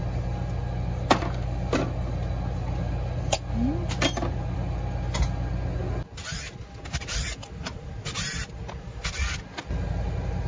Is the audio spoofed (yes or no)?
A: no